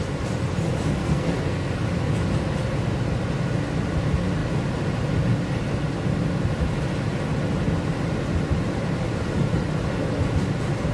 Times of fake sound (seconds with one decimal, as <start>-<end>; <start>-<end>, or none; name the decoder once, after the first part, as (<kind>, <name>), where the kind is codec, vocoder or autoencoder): 1.0-1.7 (codec, SNAC)